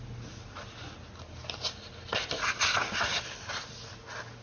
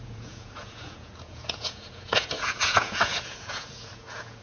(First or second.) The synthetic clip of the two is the second